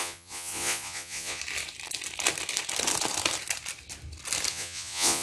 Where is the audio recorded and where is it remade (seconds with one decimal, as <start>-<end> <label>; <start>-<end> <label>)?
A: 0.0-1.4 remade; 1.4-4.5 recorded; 4.5-5.2 remade